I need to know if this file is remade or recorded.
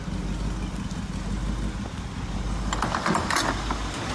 recorded